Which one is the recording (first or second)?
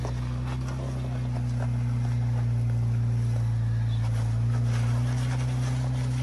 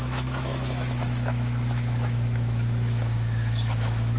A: first